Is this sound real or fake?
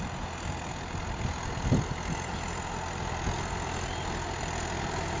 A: real